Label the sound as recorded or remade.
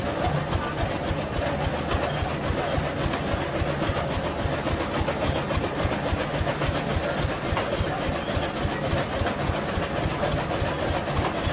recorded